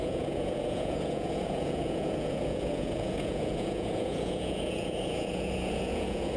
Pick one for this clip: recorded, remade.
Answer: remade